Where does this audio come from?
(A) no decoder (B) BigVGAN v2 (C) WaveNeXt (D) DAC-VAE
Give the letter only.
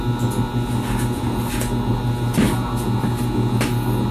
A